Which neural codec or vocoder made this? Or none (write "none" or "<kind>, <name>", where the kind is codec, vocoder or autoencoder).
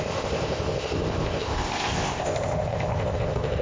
codec, ZipCodec